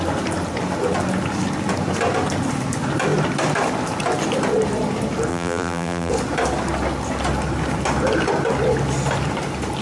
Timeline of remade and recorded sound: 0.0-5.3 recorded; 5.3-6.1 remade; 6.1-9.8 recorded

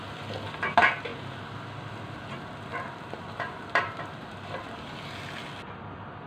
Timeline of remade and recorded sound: 0.0-2.7 recorded; 2.7-4.8 remade; 4.8-6.3 recorded